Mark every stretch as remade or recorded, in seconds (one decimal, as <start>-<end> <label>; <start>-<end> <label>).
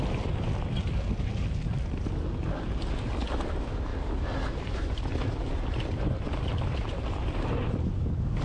0.0-8.4 recorded